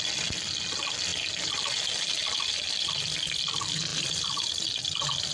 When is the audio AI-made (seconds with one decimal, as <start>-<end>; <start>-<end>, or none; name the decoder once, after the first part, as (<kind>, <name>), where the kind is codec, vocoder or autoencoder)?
3.9-4.5 (vocoder, BigVGAN v2)

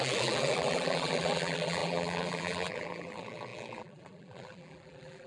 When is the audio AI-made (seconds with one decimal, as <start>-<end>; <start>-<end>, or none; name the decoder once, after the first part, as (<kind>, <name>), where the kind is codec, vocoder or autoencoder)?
0.0-5.3 (vocoder, BigVGAN v2)

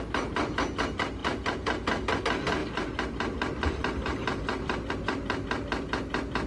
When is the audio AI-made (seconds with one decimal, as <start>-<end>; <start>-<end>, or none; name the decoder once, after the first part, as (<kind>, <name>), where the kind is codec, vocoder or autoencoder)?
2.6-4.9 (vocoder, BigVGAN v2)

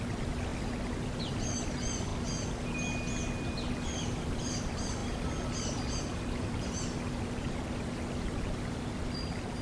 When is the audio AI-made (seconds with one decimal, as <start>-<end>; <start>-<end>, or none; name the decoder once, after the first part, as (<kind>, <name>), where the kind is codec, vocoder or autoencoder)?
0.0-0.5 (vocoder, BigVGAN v2); 1.3-2.1; 3.7-5.0; 7.2-9.6

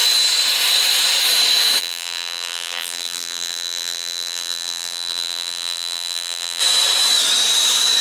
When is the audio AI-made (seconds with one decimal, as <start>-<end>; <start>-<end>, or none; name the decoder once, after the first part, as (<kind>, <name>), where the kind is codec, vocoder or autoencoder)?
1.8-6.6 (vocoder, BigVGAN v2)

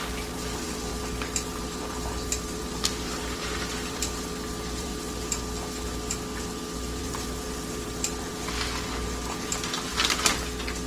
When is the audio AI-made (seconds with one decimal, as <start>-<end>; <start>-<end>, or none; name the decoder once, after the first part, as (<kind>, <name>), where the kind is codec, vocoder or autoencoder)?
0.0-0.9 (vocoder, BigVGAN v2); 2.6-4.9; 7.0-9.9